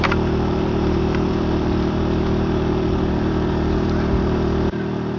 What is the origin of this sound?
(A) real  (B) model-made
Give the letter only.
B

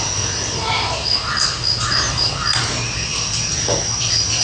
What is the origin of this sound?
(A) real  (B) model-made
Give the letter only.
A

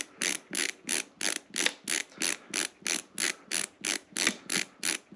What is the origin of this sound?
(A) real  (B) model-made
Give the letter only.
A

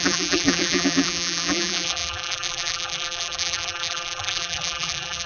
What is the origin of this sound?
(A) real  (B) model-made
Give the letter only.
B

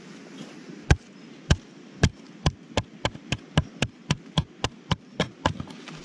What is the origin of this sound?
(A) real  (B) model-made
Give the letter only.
A